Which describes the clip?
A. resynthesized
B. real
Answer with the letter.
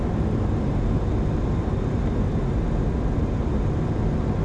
B